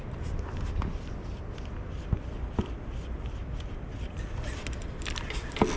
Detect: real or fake real